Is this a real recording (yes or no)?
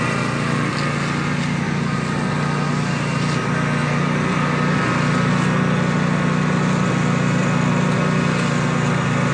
yes